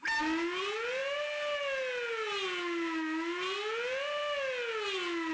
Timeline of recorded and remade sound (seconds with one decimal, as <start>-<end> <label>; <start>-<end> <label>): 0.0-5.3 recorded